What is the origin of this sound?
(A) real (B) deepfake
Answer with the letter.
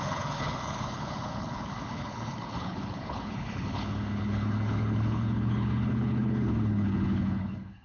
B